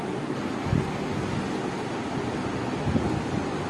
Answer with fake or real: real